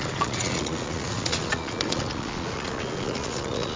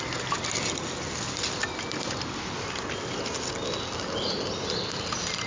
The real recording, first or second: second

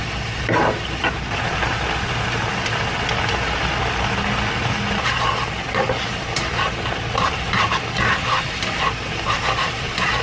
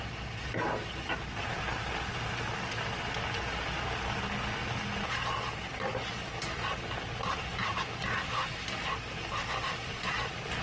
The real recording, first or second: second